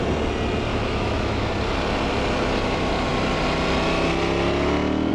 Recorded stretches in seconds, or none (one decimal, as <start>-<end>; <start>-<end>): 0.0-0.7; 1.5-5.1